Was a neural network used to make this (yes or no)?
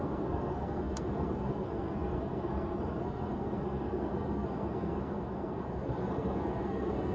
yes